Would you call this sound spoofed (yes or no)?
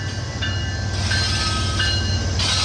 no